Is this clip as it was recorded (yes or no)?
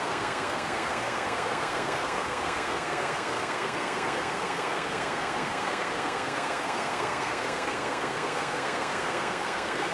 no